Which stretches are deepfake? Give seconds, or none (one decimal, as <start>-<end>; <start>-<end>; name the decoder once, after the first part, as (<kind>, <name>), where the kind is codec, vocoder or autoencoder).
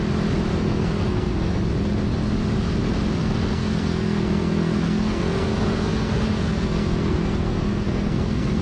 0.5-1.6 (codec, SNAC); 3.2-8.6